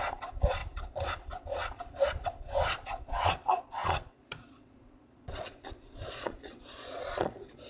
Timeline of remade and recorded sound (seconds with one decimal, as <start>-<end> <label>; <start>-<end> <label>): 0.0-7.7 remade